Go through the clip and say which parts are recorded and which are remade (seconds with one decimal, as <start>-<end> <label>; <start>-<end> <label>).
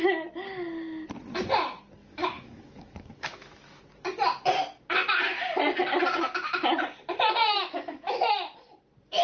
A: 0.0-2.0 recorded; 2.0-3.8 remade; 3.8-7.4 recorded; 7.4-8.3 remade; 8.3-9.2 recorded